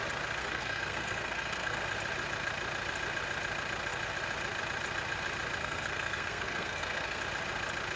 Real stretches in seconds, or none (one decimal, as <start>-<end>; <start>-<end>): 0.0-0.4; 1.8-5.6; 7.2-8.0